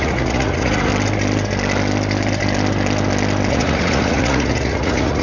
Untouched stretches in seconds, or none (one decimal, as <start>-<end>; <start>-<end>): 0.9-3.5